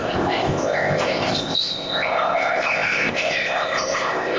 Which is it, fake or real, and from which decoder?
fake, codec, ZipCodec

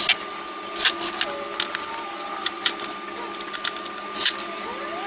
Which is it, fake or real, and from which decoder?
real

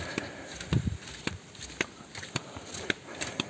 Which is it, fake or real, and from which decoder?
real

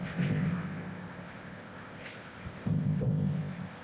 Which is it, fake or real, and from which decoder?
fake, codec, ZipCodec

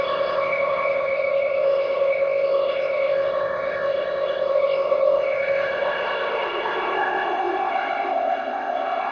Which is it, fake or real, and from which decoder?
fake, codec, ZipCodec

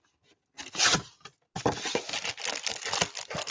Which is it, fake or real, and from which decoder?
real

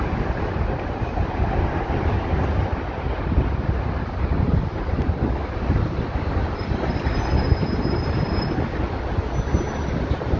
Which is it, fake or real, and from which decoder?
real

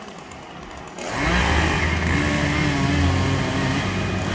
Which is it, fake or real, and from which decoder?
real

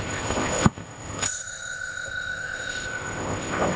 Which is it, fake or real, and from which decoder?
fake, codec, ZipCodec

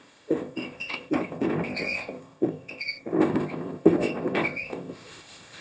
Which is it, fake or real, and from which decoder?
fake, codec, ZipCodec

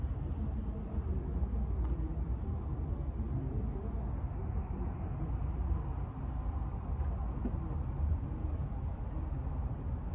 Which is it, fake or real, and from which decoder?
real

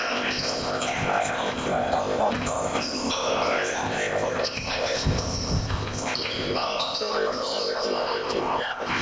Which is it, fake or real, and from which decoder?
fake, codec, ZipCodec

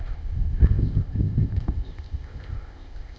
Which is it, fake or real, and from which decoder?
fake, codec, ZipCodec